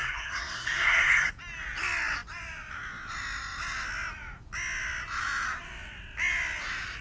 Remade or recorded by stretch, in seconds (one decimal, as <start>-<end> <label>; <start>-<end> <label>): 0.0-1.3 remade; 1.3-7.0 recorded